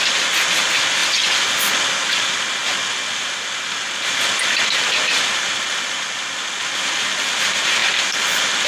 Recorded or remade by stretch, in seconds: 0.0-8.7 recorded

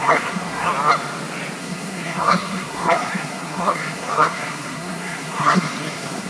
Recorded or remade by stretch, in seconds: 0.0-0.7 remade; 0.7-1.6 recorded; 1.6-6.3 remade

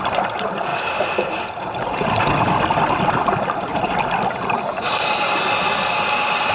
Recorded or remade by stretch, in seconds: 0.0-6.5 recorded

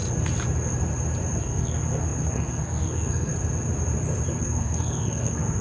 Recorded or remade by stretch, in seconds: 0.0-1.4 recorded; 1.4-3.3 remade; 3.3-4.4 recorded; 4.4-5.6 remade

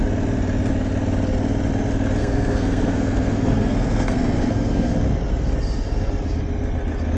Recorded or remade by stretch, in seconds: 0.0-2.2 recorded; 2.2-4.9 remade; 4.9-7.2 recorded

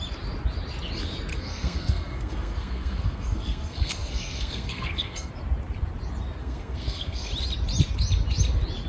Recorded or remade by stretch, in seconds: 0.0-1.3 recorded; 1.3-5.3 remade; 5.3-6.4 recorded; 6.4-7.3 remade; 7.3-8.9 recorded

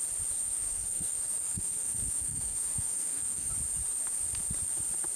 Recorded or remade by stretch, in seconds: 0.0-0.4 recorded; 0.4-3.5 remade; 3.5-5.2 recorded